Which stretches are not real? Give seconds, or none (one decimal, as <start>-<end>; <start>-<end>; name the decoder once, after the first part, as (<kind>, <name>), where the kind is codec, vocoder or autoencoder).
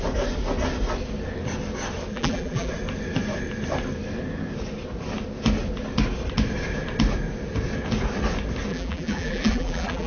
2.1-2.7 (vocoder, BigVGAN v2); 8.7-10.1